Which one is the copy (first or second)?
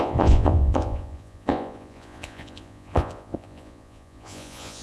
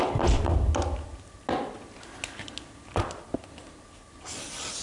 first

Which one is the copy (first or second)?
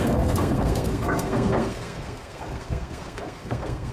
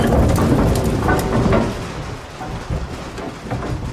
first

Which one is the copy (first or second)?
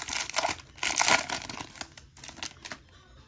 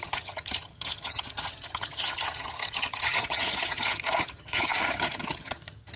second